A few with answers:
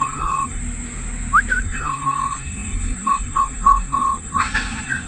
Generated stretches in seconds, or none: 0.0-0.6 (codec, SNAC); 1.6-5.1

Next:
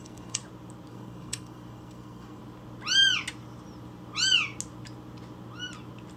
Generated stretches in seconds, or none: 0.0-0.4 (codec, SNAC); 0.9-2.4